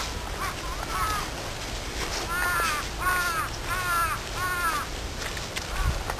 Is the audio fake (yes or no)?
no